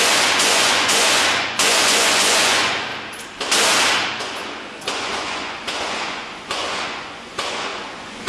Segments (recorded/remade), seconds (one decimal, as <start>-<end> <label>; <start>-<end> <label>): 0.0-2.9 remade; 2.9-4.2 recorded; 4.2-8.3 remade